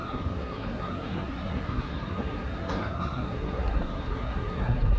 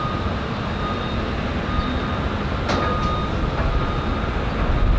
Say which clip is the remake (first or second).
first